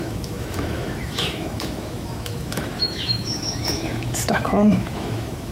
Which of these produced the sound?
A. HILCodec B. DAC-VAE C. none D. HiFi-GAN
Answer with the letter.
B